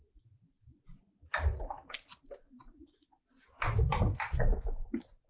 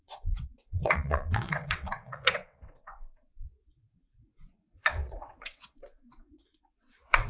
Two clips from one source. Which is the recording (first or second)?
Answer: first